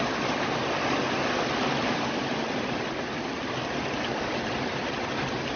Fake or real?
real